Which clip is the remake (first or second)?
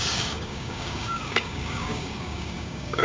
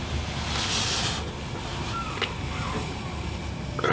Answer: first